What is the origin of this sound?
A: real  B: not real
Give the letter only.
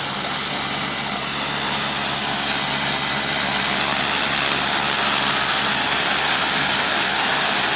A